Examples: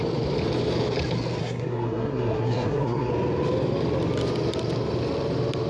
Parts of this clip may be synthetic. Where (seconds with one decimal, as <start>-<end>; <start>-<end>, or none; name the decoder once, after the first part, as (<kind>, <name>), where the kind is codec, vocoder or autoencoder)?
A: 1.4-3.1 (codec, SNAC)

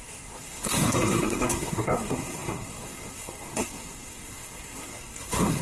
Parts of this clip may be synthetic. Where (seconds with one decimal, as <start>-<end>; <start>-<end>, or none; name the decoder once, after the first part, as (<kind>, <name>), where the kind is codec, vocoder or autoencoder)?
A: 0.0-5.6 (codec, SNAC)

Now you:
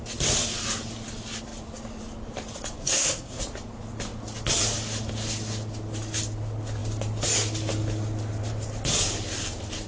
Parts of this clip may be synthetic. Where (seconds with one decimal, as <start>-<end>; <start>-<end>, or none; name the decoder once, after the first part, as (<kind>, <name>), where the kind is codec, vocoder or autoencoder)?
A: 2.8-3.4 (codec, SNAC)

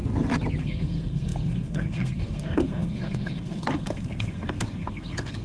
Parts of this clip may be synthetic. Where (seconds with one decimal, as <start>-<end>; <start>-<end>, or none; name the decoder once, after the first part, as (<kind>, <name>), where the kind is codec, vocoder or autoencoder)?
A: 0.6-5.4 (codec, SNAC)